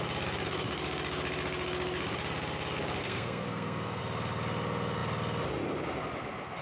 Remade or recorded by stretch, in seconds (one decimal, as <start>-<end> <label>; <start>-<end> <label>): 0.0-3.0 recorded; 3.0-4.0 remade; 4.0-6.6 recorded